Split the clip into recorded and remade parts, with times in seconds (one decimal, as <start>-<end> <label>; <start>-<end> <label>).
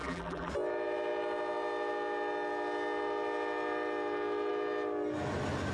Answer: 0.0-0.5 remade; 0.5-5.7 recorded